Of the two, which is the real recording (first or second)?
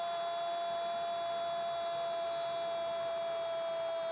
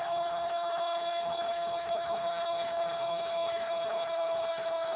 first